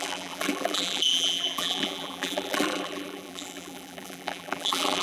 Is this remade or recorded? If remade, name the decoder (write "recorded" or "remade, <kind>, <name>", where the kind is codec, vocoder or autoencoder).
remade, vocoder, BigVGAN v2